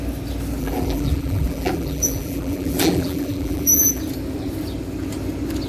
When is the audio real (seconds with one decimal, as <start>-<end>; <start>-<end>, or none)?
0.0-0.6; 4.0-5.7